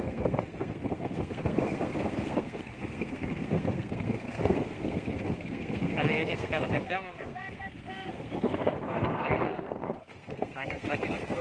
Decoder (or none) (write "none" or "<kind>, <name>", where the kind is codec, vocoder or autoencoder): codec, SNAC